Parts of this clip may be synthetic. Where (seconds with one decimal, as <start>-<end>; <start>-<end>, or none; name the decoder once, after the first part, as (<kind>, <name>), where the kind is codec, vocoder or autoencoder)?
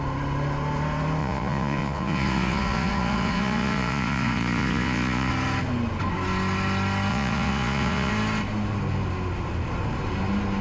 1.2-5.3 (vocoder, Vocos); 7.1-8.1